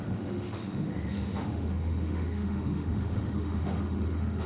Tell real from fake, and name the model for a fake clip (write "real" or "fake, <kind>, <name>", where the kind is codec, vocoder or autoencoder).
fake, autoencoder, DAC-VAE